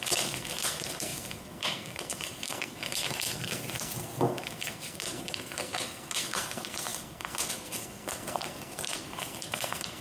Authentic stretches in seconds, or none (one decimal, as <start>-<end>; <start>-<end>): none